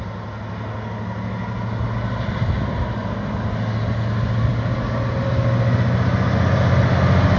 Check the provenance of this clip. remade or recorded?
recorded